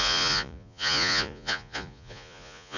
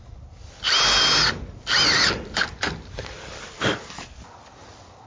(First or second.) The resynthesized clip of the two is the first